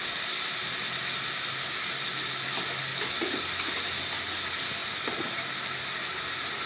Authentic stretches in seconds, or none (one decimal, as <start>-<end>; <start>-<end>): 0.0-6.7